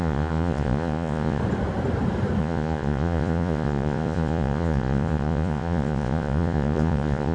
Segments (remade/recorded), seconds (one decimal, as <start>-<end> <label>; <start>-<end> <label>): 0.0-1.4 remade; 1.4-2.4 recorded; 2.4-7.3 remade